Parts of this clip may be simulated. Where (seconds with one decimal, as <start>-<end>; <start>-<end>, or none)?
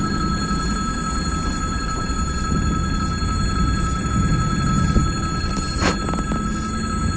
none